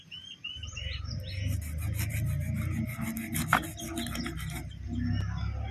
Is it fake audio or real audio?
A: real